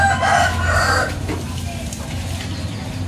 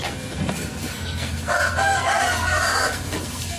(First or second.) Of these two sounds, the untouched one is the first